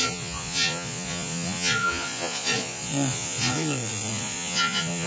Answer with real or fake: fake